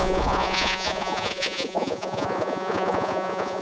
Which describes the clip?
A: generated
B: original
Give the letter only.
A